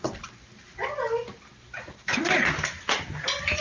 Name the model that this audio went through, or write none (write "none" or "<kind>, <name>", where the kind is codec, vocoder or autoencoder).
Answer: none